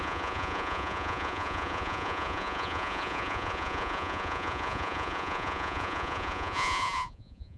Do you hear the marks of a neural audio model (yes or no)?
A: yes